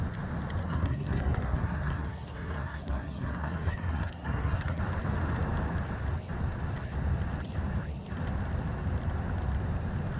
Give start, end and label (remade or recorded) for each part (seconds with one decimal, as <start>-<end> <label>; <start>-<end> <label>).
0.0-0.6 recorded; 0.6-4.8 remade; 4.8-10.2 recorded

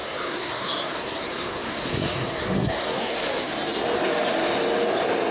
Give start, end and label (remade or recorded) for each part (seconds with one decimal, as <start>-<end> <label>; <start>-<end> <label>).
0.0-3.5 remade; 3.5-5.3 recorded